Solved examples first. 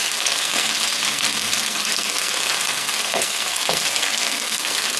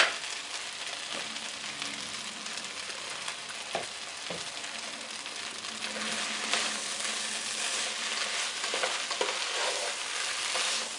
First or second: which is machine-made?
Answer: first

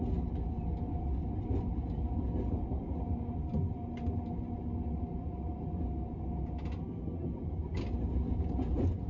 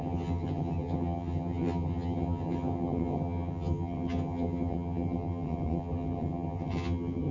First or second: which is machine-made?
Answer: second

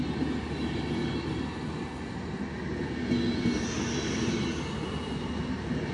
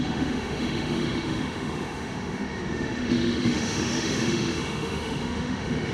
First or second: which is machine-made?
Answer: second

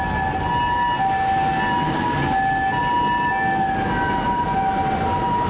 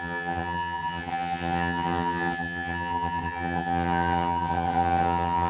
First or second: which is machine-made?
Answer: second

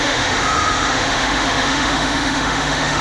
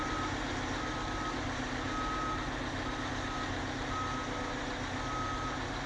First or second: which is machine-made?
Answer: first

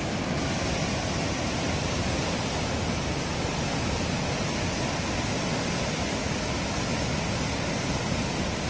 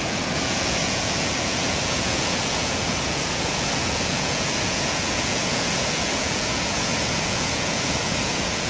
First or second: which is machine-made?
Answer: second